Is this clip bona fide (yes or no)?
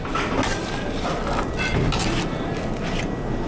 yes